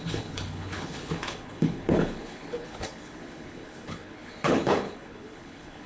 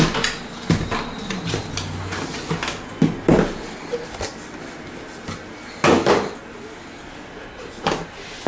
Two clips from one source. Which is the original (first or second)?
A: second